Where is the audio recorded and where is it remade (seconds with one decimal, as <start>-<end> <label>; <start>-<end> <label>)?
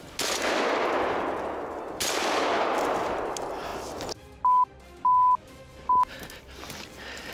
0.0-7.3 recorded